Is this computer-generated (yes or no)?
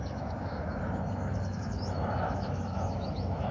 yes